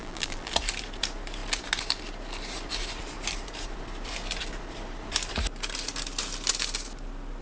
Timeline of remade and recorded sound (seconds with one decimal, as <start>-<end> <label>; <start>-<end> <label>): 0.0-0.5 remade; 0.5-7.4 recorded